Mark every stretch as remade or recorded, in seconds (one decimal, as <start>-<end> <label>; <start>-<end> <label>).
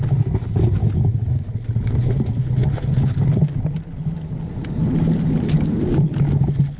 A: 0.0-0.8 recorded; 0.8-1.5 remade; 1.5-6.8 recorded